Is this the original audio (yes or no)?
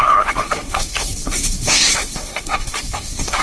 no